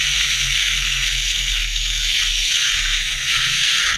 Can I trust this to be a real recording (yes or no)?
no